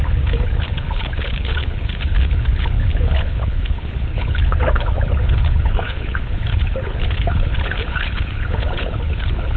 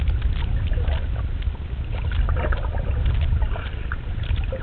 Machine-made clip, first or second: first